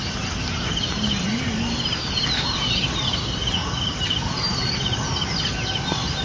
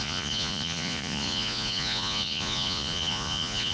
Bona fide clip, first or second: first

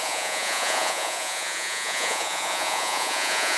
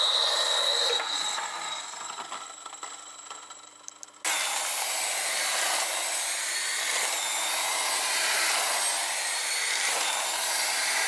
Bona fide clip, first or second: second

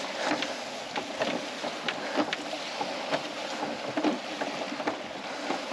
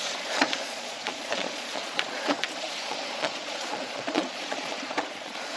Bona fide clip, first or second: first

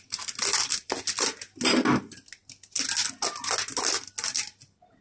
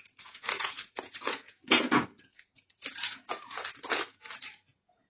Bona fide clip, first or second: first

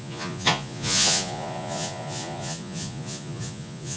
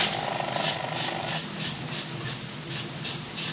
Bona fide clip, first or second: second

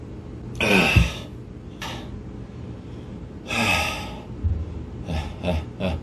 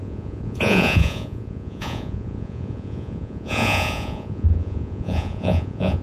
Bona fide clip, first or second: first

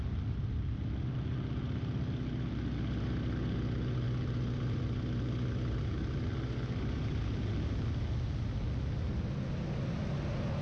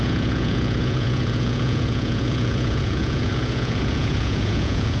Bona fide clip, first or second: first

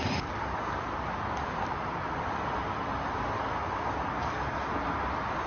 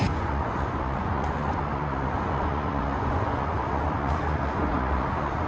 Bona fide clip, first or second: first